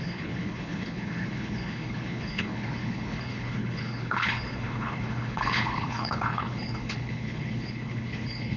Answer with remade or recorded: remade